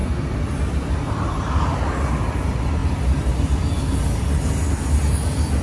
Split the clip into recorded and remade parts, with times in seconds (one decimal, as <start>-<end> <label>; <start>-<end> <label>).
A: 0.0-5.6 recorded